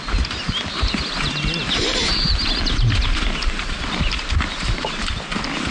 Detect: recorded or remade recorded